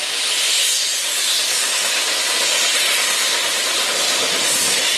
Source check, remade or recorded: recorded